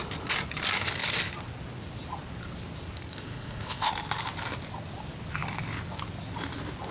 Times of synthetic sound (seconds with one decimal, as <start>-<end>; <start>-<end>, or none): 3.1-3.9